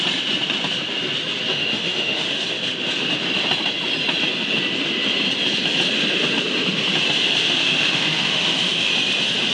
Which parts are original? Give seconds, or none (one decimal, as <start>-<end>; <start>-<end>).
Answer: 0.0-1.5; 2.4-7.4; 8.9-9.5